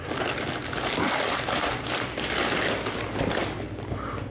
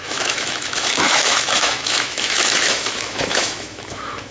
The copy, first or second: second